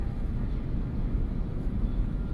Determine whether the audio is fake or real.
fake